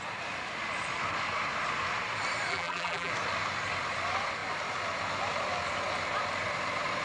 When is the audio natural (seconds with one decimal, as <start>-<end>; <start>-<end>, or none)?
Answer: 0.0-2.5; 3.1-7.0